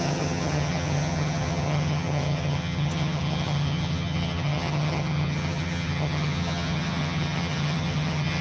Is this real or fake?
fake